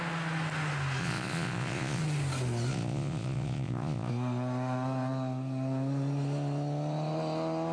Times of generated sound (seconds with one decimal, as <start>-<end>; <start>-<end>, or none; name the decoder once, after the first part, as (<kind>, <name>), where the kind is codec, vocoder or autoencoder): 1.0-2.0 (vocoder, Vocos); 2.7-4.1